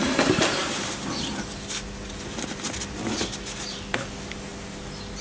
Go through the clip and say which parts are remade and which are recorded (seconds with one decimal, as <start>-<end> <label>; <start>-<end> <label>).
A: 0.0-5.2 recorded